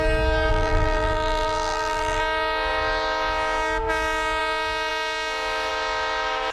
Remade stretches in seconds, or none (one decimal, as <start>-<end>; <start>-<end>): 0.5-2.2

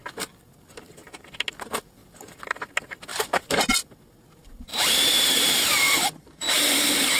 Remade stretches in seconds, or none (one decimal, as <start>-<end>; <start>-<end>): 2.0-2.6; 3.1-3.7; 4.7-6.8

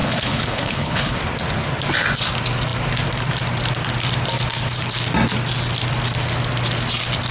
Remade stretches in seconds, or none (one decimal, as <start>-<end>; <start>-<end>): 0.0-1.2

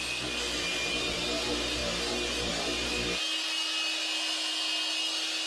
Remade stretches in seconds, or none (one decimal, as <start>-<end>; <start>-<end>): none

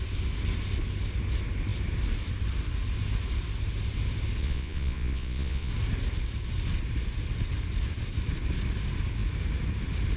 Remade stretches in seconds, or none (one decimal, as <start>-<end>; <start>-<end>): 4.4-5.7

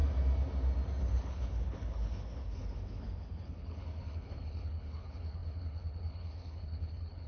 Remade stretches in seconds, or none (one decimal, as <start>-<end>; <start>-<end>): 1.0-7.3

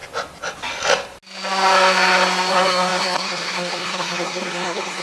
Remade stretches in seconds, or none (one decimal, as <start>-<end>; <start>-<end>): 2.5-5.0

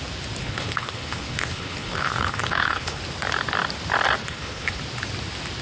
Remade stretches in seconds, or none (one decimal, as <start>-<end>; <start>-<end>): 0.4-3.0; 4.2-4.8